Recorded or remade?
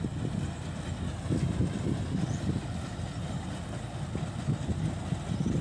recorded